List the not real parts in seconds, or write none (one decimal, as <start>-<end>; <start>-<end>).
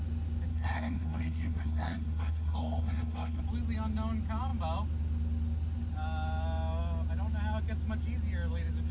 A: 0.5-3.4